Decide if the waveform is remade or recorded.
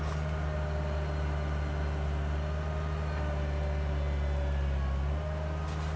recorded